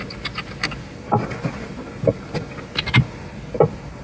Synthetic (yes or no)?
no